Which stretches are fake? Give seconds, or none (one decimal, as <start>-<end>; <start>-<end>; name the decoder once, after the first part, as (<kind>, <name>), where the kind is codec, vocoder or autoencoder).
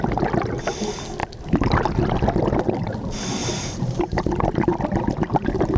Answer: 3.4-4.0 (vocoder, BigVGAN v2)